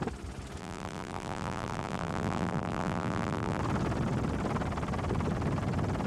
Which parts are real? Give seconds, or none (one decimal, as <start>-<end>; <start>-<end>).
0.0-0.6; 3.6-6.1